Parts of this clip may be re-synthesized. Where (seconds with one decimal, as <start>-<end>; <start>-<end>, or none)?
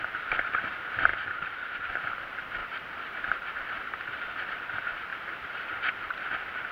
1.1-1.9; 2.6-3.7; 5.1-5.7